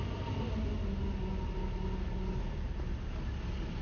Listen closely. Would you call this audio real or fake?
real